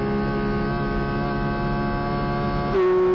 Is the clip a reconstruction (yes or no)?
no